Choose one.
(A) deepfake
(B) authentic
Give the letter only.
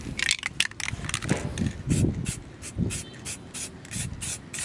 B